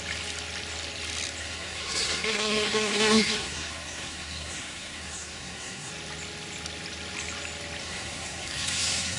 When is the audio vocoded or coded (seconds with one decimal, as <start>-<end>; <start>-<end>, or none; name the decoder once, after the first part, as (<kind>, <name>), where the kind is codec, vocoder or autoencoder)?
1.4-5.9 (codec, SNAC); 7.8-9.2

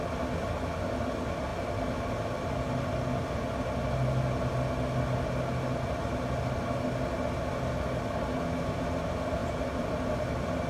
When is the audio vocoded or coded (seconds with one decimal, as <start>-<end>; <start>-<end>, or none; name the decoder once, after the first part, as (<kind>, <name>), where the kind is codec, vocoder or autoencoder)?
9.4-10.7 (vocoder, BigVGAN v2)

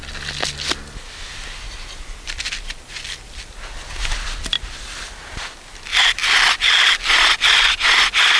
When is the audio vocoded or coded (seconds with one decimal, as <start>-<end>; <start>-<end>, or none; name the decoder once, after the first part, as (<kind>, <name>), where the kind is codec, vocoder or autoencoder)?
none